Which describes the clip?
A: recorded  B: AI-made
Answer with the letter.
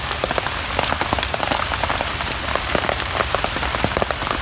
A